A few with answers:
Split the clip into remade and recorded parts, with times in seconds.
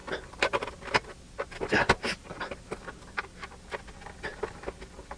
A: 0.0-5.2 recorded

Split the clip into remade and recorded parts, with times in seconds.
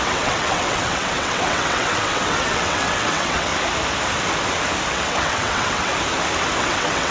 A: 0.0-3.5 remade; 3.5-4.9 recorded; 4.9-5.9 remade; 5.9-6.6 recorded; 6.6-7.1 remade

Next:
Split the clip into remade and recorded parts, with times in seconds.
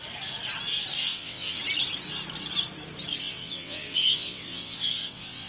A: 0.0-1.0 recorded; 1.0-1.6 remade; 1.6-3.2 recorded; 3.2-5.5 remade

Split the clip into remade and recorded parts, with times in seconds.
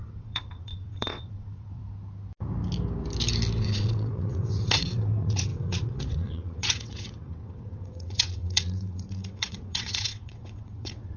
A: 0.0-1.8 remade; 1.8-3.6 recorded; 3.6-11.2 remade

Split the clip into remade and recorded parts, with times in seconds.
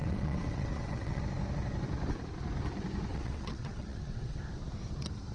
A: 0.0-1.2 remade; 1.2-3.1 recorded; 3.1-4.4 remade; 4.4-5.3 recorded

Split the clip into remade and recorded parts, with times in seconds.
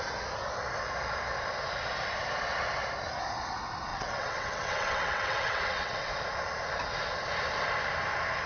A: 0.0-3.9 recorded; 3.9-6.2 remade; 6.2-8.5 recorded